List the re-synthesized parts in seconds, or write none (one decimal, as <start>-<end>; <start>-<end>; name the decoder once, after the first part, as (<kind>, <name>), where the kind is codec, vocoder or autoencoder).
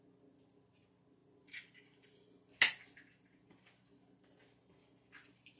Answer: none